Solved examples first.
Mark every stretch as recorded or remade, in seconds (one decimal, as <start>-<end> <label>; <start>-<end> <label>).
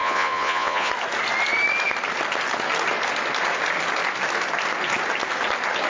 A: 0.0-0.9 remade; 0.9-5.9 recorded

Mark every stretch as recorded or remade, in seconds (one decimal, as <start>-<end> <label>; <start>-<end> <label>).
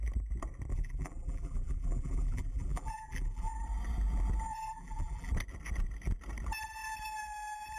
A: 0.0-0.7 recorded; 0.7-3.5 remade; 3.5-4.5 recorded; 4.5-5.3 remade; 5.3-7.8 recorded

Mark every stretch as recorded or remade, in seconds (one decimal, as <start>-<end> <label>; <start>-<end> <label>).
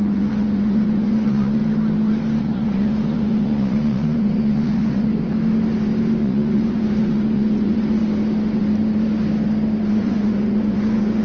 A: 0.0-1.6 remade; 1.6-2.4 recorded; 2.4-5.1 remade; 5.1-6.2 recorded; 6.2-8.0 remade; 8.0-9.9 recorded; 9.9-11.2 remade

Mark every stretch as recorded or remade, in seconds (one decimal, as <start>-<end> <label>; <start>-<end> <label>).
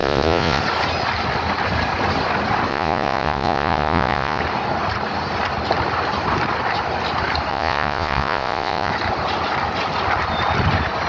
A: 0.0-0.6 remade; 0.6-2.7 recorded; 2.7-4.4 remade; 4.4-7.5 recorded; 7.5-8.9 remade; 8.9-11.1 recorded